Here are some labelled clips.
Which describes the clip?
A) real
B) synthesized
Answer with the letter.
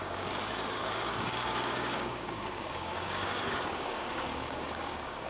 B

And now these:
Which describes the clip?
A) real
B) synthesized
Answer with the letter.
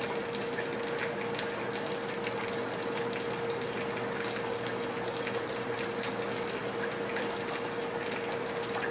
A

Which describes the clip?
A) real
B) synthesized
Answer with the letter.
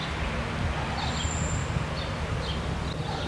A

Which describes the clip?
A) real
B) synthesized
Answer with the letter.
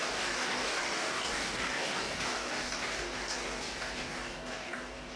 B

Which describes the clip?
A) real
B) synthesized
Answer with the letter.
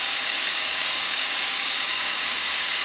B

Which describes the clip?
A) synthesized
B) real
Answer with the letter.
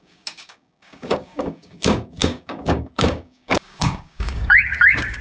A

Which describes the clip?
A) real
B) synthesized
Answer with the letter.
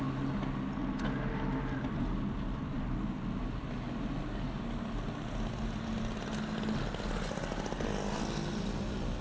A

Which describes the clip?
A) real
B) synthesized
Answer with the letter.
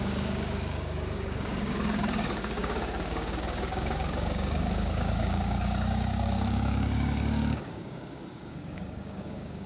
B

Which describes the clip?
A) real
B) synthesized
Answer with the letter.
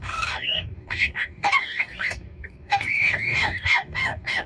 B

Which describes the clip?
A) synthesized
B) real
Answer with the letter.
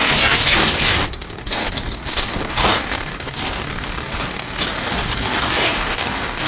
A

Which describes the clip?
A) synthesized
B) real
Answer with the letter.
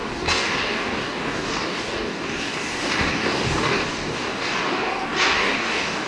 A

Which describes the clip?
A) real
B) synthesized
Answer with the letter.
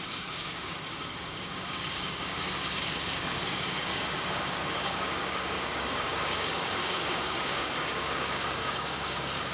B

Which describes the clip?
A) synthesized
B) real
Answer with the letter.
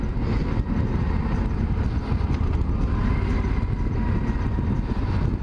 B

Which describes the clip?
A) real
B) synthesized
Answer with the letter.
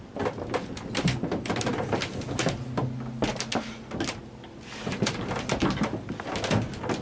A